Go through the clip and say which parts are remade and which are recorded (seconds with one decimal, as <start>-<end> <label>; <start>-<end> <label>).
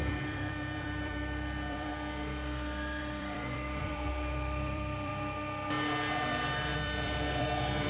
0.0-1.9 remade; 1.9-3.0 recorded; 3.0-5.1 remade; 5.1-6.1 recorded; 6.1-7.9 remade